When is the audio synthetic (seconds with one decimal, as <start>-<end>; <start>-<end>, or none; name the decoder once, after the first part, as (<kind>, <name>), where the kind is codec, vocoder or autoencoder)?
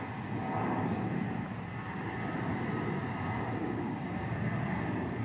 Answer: none